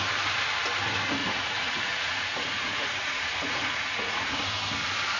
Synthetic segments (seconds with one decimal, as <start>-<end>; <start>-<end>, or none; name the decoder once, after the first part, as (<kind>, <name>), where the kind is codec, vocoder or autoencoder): 1.2-4.3 (vocoder, Vocos)